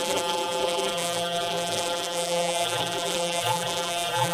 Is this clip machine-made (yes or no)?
yes